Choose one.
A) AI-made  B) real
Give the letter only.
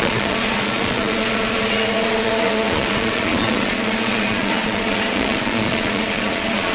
A